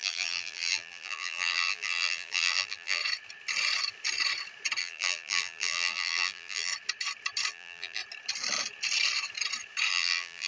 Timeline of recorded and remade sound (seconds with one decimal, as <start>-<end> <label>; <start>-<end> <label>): 0.0-3.0 remade; 3.0-4.8 recorded; 4.8-6.7 remade; 6.7-7.5 recorded; 7.5-8.0 remade; 8.0-9.9 recorded; 9.9-10.5 remade